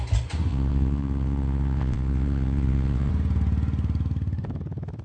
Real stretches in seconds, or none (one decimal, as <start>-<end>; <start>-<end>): 0.0-0.5; 3.1-5.0